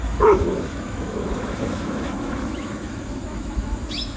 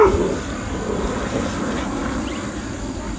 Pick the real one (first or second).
second